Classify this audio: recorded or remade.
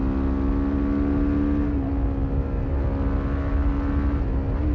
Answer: recorded